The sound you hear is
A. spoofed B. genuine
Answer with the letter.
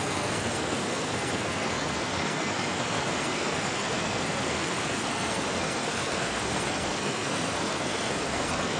A